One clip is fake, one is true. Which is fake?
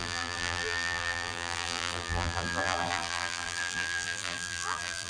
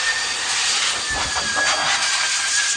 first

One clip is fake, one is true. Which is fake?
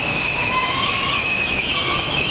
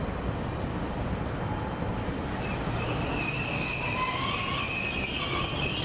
first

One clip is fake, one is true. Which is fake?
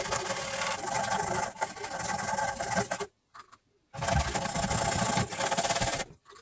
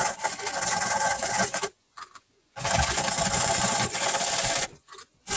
second